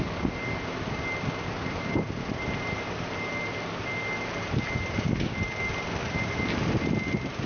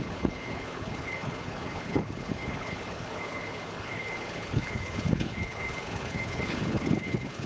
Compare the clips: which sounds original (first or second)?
first